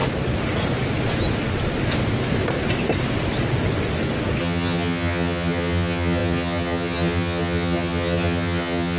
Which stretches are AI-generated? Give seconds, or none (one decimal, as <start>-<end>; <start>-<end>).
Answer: 4.4-9.0